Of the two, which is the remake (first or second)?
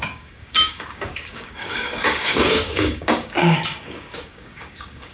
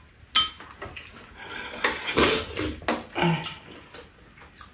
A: first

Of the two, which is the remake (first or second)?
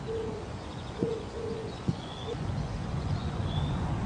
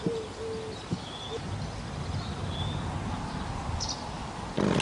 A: first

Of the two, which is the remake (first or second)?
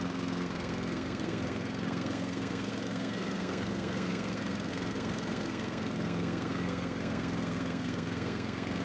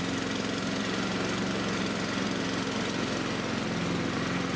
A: first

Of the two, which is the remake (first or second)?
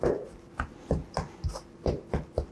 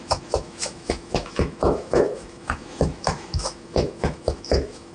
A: second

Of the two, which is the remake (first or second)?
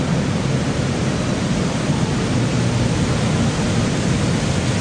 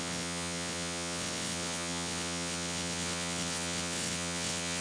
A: second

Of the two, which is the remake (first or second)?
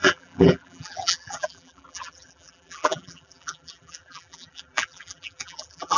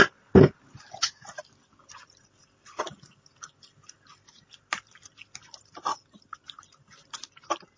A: first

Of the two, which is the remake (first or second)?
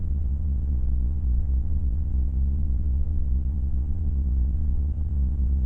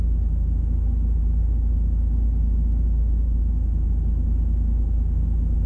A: first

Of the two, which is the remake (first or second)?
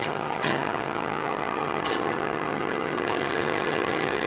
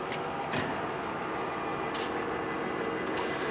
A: first